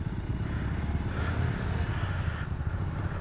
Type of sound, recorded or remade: recorded